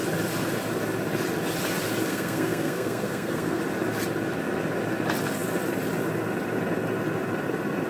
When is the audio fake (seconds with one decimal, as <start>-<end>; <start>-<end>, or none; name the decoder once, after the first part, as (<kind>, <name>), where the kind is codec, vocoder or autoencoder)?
2.1-3.6 (codec, SNAC)